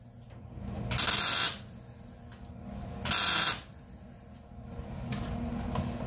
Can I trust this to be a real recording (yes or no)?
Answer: yes